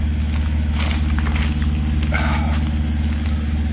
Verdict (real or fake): real